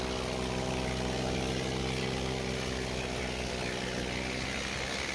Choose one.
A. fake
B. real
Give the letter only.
B